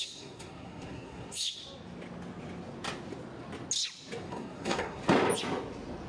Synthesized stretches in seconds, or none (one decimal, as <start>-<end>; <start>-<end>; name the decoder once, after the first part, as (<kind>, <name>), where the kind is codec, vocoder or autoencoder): 0.0-1.6 (codec, SNAC); 4.3-5.0